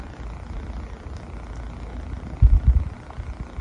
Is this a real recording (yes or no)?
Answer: yes